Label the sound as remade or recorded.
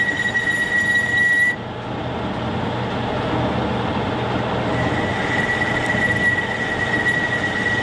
recorded